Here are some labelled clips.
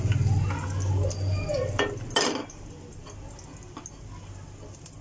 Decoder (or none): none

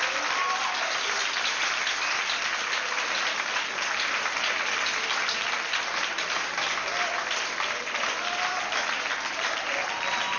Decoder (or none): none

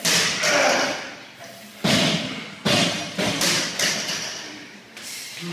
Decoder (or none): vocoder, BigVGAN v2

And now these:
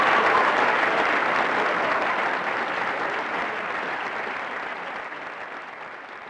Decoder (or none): none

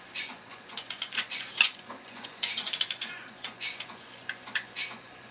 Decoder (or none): vocoder, Vocos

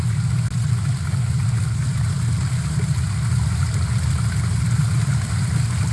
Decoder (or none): none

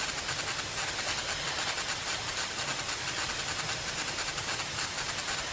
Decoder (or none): none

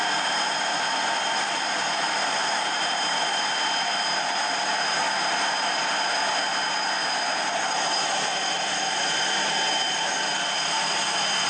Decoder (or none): none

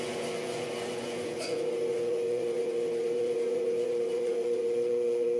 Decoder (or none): vocoder, Vocos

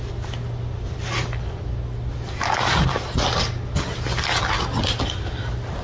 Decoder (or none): none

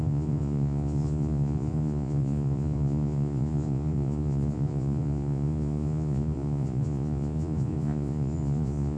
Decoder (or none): vocoder, Vocos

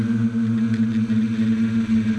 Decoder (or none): none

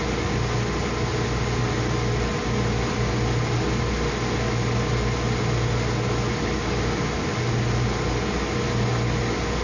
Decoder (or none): none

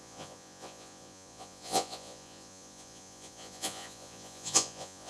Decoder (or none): vocoder, Vocos